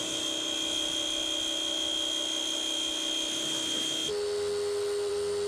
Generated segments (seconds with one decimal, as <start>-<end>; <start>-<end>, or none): none